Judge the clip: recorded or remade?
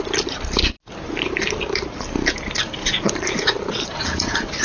recorded